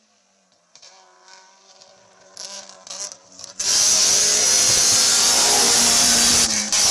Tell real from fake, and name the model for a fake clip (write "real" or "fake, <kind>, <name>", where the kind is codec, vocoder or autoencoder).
fake, vocoder, BigVGAN v2